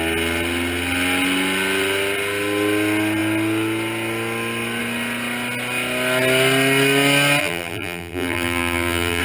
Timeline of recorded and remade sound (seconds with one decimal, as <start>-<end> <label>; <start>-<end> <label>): 0.0-7.4 recorded; 7.4-9.2 remade